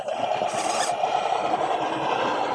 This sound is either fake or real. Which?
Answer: real